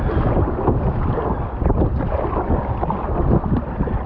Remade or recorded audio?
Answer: recorded